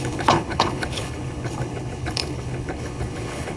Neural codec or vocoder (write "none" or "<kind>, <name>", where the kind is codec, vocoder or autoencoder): codec, HILCodec